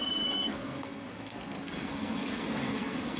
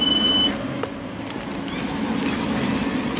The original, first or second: second